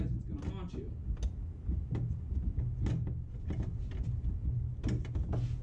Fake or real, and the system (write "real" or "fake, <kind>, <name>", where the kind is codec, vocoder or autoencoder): real